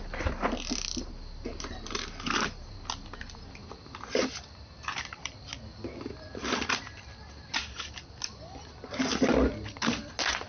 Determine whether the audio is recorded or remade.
recorded